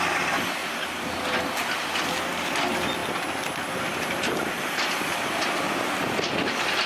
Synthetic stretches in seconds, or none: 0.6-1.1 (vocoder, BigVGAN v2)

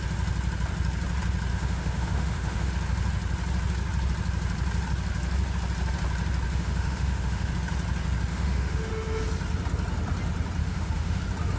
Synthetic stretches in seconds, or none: 1.5-2.7 (autoencoder, DAC-VAE); 6.5-7.5; 8.3-9.2; 10.6-11.2

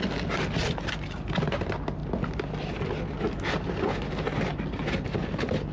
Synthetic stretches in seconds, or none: none

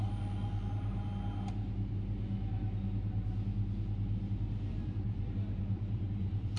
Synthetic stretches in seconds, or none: 4.7-6.6 (vocoder, BigVGAN v2)

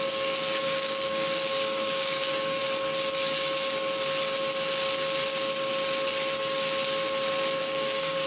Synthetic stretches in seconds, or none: 0.0-2.6 (codec, DAC); 7.6-8.3

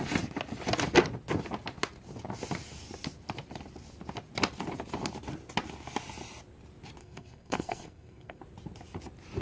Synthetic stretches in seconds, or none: 7.0-8.4 (codec, SNAC)

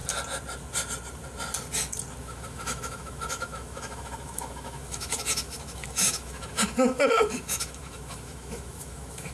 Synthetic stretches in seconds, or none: 2.2-9.3 (autoencoder, DAC-VAE)